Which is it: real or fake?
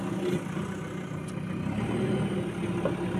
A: real